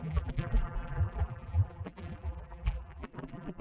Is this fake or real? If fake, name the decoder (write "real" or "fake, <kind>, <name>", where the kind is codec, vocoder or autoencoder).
fake, vocoder, BigVGAN v2